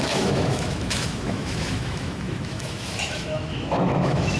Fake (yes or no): yes